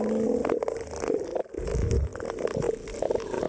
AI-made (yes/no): no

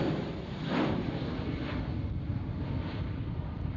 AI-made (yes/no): no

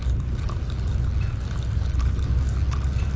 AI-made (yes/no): no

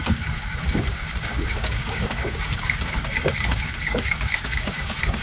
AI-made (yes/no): yes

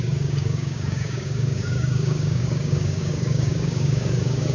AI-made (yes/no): yes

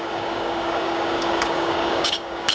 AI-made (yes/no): yes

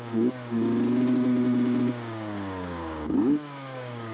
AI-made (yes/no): yes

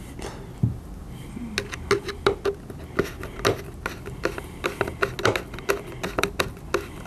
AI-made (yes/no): no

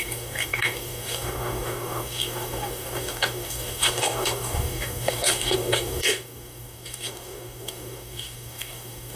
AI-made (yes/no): yes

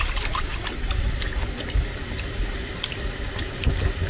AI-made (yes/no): no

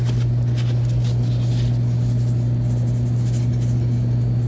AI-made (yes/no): no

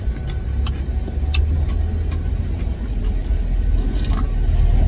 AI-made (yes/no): no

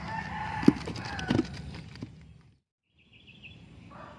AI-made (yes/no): no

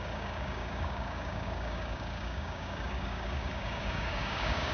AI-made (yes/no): yes